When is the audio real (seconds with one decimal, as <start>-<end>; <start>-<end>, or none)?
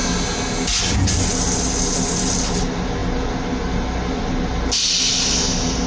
0.0-5.9